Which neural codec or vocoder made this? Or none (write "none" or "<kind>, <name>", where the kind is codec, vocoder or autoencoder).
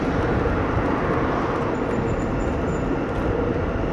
none